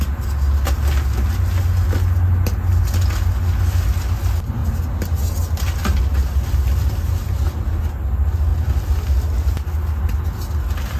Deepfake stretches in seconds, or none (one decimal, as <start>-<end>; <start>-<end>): none